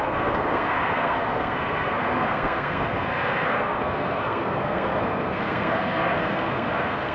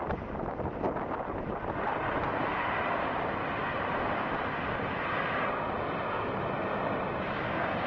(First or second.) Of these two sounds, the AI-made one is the first